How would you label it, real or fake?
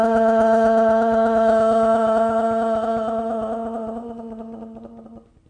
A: real